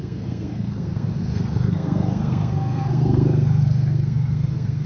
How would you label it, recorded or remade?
remade